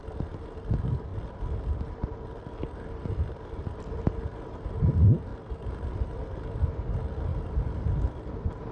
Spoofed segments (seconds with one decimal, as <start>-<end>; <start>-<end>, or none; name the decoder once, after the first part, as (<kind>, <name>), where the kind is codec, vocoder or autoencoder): none